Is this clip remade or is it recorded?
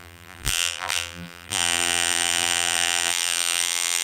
remade